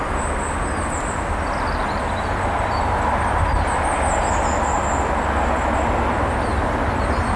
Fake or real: real